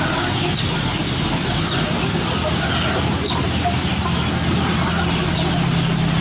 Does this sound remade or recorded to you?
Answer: recorded